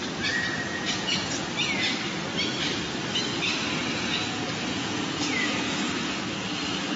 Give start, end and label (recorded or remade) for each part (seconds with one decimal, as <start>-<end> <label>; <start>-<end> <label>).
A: 0.0-0.7 recorded; 0.7-1.3 remade; 1.3-3.9 recorded; 3.9-6.2 remade; 6.2-7.0 recorded

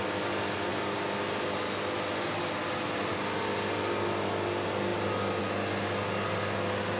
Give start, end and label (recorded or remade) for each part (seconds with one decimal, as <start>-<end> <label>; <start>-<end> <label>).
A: 0.0-7.0 recorded

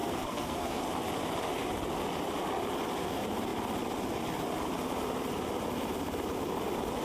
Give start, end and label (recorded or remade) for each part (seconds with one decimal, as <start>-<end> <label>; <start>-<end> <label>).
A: 0.0-0.8 remade; 0.8-7.0 recorded

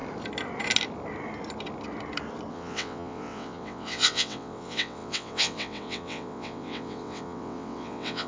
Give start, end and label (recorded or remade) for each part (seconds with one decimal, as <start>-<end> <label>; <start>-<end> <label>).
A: 0.0-2.5 recorded; 2.5-8.3 remade

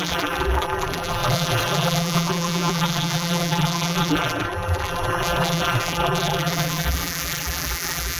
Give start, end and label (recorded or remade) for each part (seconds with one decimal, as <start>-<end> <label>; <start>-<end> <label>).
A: 0.0-8.2 remade

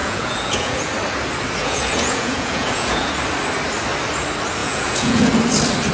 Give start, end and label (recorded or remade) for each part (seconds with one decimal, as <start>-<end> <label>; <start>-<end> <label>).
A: 0.0-0.9 remade; 0.9-1.6 recorded; 1.6-3.1 remade; 3.1-4.6 recorded; 4.6-5.3 remade; 5.3-5.9 recorded